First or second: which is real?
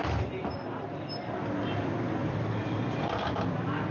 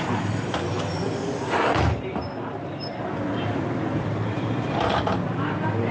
first